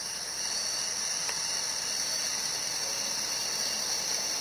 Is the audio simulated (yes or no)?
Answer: yes